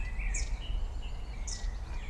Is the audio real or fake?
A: real